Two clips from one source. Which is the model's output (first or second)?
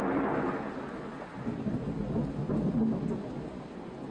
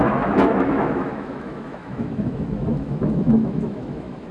second